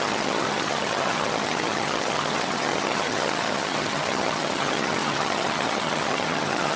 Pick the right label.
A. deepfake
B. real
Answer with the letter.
A